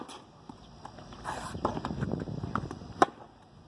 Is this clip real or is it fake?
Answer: fake